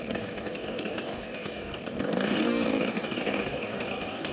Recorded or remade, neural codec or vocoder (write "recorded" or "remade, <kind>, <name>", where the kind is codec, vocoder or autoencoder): remade, codec, DAC